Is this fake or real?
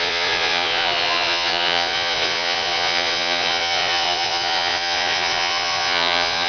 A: fake